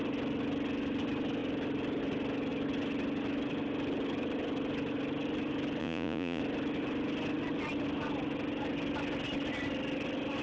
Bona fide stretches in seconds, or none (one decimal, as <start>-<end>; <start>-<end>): 0.0-5.8; 6.4-10.4